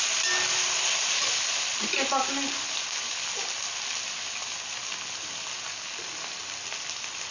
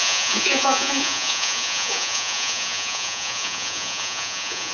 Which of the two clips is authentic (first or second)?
first